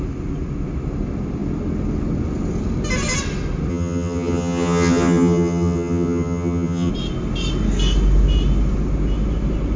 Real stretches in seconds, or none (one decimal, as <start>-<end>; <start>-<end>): 0.0-3.7; 6.9-9.8

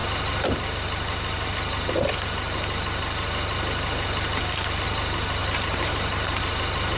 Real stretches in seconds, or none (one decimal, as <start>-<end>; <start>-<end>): 0.0-5.4; 6.4-7.0

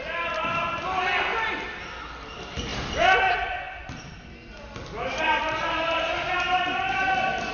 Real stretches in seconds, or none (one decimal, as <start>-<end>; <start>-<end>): 0.0-7.5

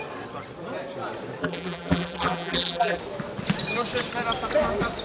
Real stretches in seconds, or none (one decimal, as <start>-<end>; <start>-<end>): 0.0-1.4; 3.0-5.0

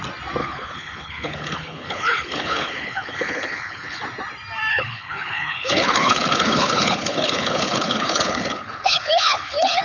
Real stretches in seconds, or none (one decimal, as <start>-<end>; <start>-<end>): 0.0-0.4; 4.0-4.7

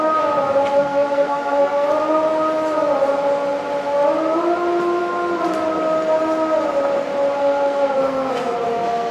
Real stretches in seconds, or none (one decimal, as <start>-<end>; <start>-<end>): 0.0-0.7; 1.9-7.4

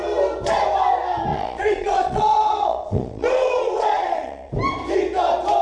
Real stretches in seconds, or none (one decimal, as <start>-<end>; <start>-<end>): 0.0-1.3; 4.5-5.6

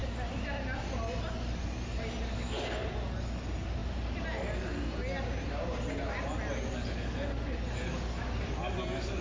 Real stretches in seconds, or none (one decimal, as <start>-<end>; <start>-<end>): 0.0-9.2